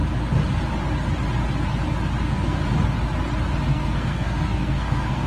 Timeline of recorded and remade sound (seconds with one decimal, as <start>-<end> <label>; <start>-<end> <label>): 0.0-2.2 recorded; 2.2-2.6 remade; 2.6-3.7 recorded; 3.7-5.3 remade

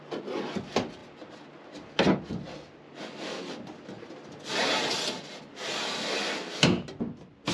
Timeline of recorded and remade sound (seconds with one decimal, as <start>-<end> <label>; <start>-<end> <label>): 0.0-7.5 recorded

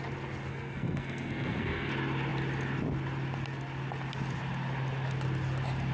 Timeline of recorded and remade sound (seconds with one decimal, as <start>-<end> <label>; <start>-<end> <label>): 0.0-0.5 recorded; 0.5-1.9 remade; 1.9-5.9 recorded

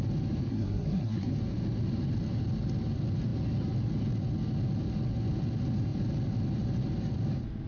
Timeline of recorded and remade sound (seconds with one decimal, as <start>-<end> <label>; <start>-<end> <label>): 0.0-0.5 recorded; 0.5-1.3 remade; 1.3-7.7 recorded

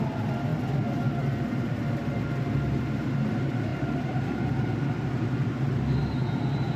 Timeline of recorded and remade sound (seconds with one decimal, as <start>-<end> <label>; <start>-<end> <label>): 0.0-6.8 recorded

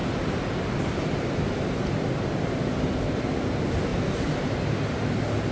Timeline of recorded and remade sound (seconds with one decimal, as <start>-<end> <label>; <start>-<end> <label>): 0.0-5.5 recorded

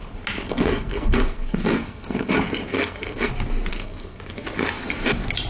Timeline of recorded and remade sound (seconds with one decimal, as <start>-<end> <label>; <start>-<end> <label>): 0.0-0.4 recorded; 0.4-2.3 remade; 2.3-2.7 recorded; 2.7-3.3 remade; 3.3-3.7 recorded; 3.7-4.2 remade; 4.2-5.5 recorded

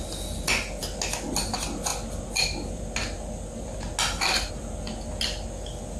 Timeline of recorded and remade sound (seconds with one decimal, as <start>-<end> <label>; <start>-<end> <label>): 0.0-6.0 recorded